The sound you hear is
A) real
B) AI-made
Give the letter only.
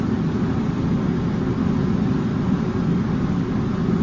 A